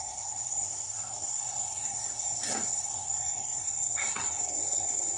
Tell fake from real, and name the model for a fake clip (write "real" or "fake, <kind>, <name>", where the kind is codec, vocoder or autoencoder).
fake, codec, SNAC